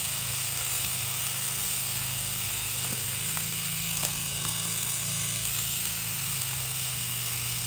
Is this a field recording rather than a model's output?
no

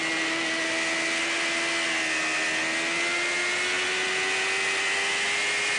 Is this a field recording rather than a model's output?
yes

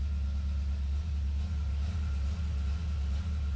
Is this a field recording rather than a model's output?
yes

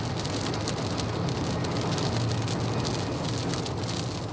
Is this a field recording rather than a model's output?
yes